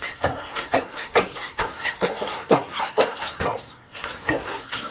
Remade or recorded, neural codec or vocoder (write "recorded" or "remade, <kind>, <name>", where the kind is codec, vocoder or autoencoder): remade, codec, SNAC